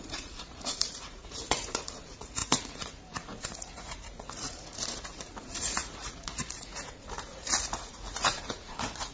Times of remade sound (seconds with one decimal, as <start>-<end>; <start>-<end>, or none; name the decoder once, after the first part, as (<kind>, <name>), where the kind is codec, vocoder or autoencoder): 0.0-9.1 (vocoder, Vocos)